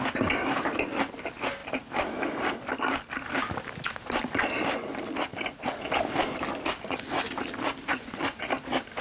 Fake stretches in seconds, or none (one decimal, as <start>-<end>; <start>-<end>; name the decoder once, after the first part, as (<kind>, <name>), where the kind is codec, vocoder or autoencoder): 7.9-8.5 (vocoder, Vocos)